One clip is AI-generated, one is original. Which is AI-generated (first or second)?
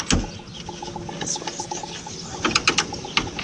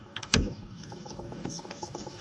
second